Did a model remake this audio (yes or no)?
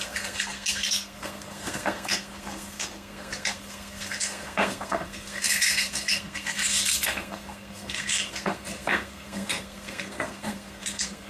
yes